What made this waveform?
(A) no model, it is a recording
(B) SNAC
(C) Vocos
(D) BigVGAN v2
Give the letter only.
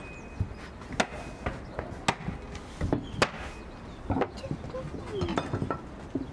A